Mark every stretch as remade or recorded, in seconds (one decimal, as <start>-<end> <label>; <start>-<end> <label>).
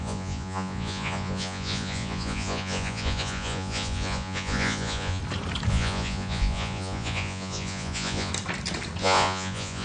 0.0-5.2 remade; 5.2-5.7 recorded; 5.7-8.3 remade; 8.3-9.0 recorded; 9.0-9.8 remade